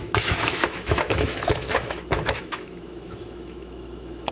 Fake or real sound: fake